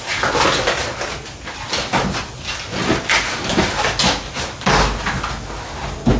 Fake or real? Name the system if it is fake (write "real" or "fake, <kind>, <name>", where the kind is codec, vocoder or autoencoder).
real